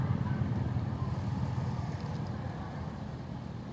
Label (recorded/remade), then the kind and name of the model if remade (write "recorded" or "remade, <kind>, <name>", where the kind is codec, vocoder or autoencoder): recorded